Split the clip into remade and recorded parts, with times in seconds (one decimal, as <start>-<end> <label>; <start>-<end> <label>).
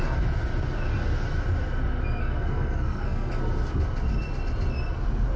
0.0-2.2 recorded; 2.2-3.3 remade; 3.3-5.4 recorded